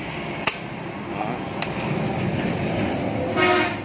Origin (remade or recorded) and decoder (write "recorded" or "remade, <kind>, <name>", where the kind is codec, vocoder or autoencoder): recorded